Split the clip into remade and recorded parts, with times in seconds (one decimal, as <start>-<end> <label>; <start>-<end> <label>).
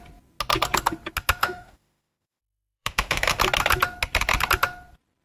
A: 0.0-1.4 recorded; 1.4-3.4 remade; 3.4-5.2 recorded